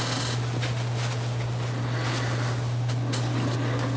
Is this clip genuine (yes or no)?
yes